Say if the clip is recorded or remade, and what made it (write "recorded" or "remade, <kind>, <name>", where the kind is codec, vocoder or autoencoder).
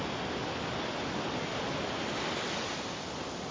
recorded